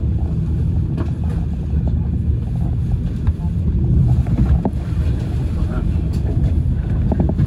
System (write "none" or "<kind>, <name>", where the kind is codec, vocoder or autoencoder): none